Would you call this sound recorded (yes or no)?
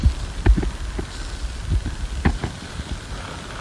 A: yes